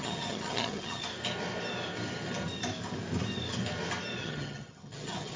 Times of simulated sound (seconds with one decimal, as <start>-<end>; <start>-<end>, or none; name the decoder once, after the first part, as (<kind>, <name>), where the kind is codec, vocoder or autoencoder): 0.0-1.0 (vocoder, HiFi-GAN); 4.2-5.4